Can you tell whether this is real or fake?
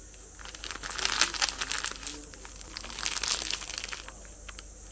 real